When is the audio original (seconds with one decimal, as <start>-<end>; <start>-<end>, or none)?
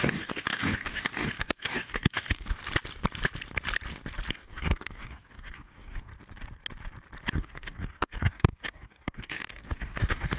2.6-4.3; 6.1-7.3